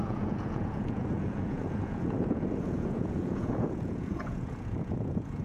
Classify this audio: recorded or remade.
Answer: remade